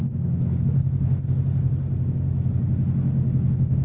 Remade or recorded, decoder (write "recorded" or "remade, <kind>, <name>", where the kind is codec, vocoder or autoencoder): recorded